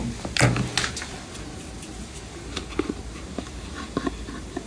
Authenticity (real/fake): real